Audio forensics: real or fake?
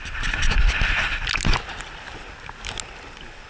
real